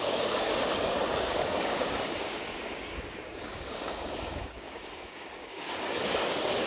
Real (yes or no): no